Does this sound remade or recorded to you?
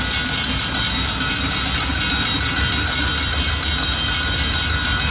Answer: recorded